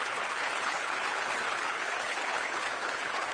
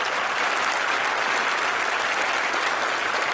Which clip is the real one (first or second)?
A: second